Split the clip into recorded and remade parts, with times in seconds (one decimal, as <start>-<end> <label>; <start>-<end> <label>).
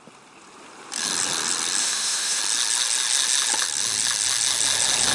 0.0-1.8 recorded; 1.8-2.4 remade; 2.4-5.1 recorded